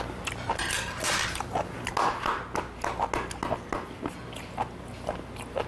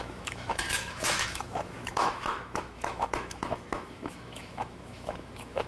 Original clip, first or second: first